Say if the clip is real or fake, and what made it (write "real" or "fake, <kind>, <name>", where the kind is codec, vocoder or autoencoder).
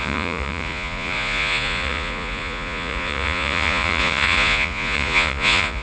fake, vocoder, Vocos